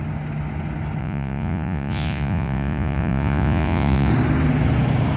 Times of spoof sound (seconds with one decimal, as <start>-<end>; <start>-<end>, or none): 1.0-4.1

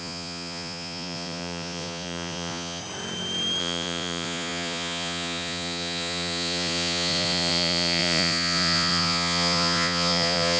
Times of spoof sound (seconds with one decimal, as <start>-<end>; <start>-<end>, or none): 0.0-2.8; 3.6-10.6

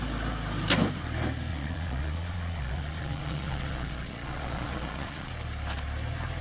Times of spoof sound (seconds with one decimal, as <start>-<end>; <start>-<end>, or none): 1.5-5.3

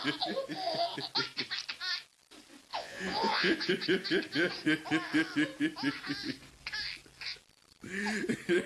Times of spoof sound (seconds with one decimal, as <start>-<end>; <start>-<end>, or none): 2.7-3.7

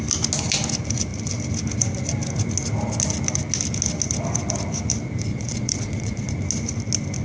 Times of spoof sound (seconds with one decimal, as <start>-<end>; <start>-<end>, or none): 5.3-6.3

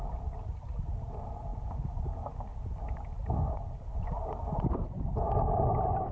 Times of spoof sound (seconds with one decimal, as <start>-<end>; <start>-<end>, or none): none

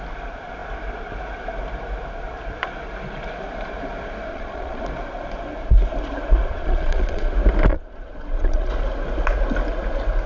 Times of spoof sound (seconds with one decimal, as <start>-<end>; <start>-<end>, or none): 4.3-4.8; 6.5-7.3; 7.7-8.7